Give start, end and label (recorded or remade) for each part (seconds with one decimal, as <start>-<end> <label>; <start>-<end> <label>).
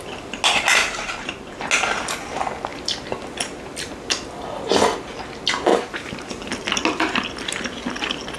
0.0-0.8 recorded; 0.8-1.6 remade; 1.6-5.7 recorded; 5.7-6.3 remade; 6.3-8.4 recorded